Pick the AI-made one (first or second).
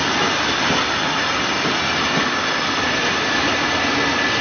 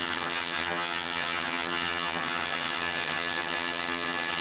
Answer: second